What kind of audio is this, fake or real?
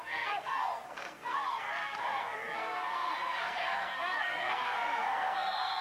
fake